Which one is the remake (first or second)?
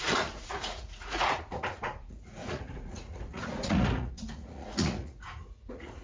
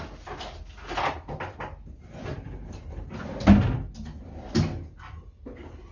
first